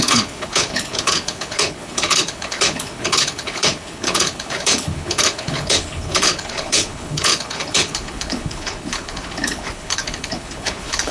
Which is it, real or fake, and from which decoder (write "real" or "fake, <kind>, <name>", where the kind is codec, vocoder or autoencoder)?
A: fake, codec, HILCodec